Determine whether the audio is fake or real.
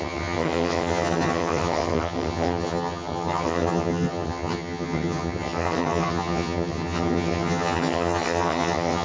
fake